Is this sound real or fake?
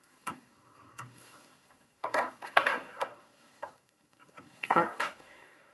fake